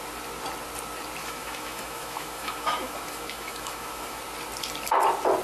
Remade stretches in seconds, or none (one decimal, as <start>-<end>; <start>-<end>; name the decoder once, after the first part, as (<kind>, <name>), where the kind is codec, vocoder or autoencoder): 1.2-4.2 (autoencoder, DAC-VAE)